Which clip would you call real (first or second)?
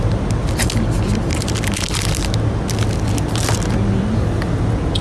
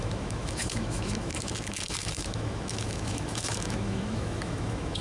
first